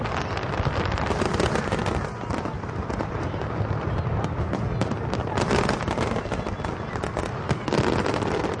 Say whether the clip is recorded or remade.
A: recorded